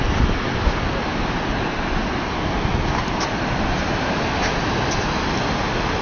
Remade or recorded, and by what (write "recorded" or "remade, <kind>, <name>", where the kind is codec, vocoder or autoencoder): recorded